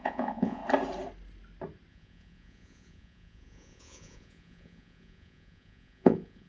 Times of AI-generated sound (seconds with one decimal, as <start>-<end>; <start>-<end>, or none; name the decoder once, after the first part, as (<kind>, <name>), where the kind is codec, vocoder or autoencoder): 0.0-0.6 (vocoder, Vocos); 1.9-6.5